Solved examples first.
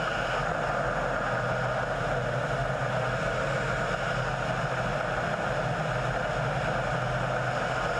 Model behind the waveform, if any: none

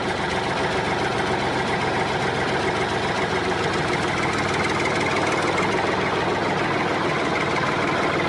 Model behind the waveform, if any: none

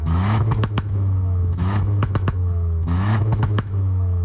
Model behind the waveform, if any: autoencoder, DAC-VAE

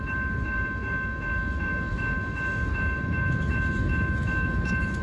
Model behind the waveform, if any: autoencoder, DAC-VAE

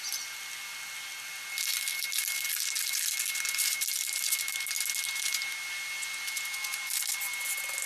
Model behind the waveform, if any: none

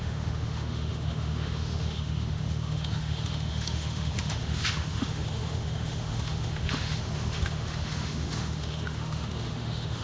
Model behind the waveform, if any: autoencoder, DAC-VAE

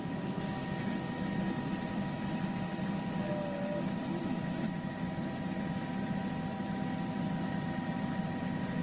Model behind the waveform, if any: none